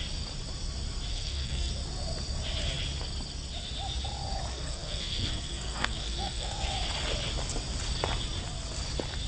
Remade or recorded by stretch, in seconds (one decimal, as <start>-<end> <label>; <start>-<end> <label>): 0.0-1.1 recorded; 1.1-1.7 remade; 1.7-4.5 recorded; 4.5-6.7 remade; 6.7-9.3 recorded